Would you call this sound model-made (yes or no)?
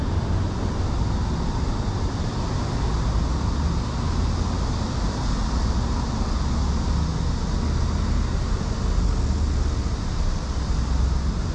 no